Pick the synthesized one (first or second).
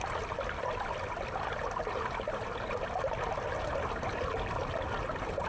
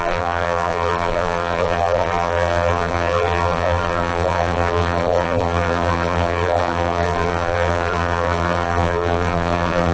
second